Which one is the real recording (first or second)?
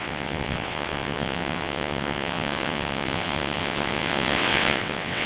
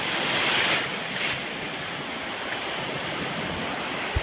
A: second